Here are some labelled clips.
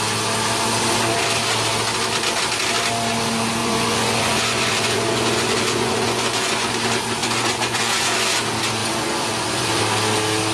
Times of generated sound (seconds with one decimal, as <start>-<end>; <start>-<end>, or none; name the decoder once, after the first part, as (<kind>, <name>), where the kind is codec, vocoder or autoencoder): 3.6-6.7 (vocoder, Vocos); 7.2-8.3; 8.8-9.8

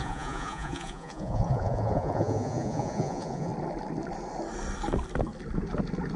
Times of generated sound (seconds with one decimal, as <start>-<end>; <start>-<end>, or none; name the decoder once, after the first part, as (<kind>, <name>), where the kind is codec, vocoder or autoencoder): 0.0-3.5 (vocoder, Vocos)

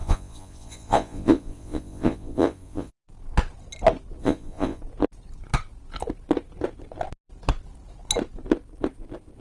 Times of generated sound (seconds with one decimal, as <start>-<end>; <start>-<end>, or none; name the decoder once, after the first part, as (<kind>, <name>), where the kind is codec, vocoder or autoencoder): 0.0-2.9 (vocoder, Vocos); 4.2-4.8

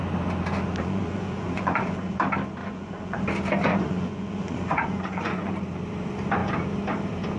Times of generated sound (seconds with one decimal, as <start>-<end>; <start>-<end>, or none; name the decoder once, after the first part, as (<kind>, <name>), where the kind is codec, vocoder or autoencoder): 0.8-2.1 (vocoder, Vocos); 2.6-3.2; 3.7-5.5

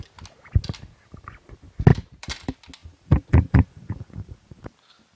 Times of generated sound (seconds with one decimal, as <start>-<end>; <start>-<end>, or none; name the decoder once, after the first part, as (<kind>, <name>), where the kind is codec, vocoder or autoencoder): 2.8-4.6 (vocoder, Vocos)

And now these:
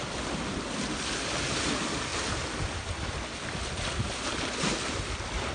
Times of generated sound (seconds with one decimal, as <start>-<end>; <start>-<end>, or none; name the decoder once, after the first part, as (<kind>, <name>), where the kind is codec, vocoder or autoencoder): none

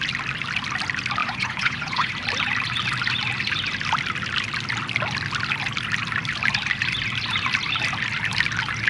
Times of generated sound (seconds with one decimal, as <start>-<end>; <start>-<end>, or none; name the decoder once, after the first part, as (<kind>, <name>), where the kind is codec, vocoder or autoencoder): 1.2-2.1 (vocoder, Vocos)

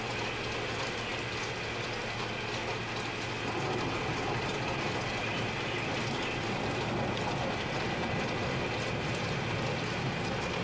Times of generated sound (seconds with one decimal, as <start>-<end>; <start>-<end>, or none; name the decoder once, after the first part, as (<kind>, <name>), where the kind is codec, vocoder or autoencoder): none